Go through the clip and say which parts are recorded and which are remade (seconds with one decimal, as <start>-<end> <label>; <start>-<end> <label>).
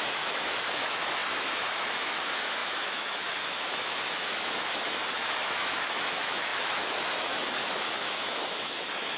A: 0.0-9.2 remade